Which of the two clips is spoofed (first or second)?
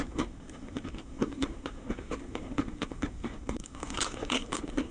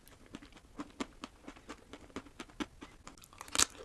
first